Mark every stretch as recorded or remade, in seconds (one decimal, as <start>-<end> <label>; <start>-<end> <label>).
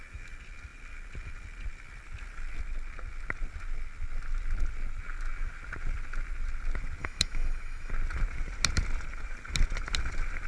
0.0-7.0 recorded; 7.0-7.9 remade; 7.9-10.5 recorded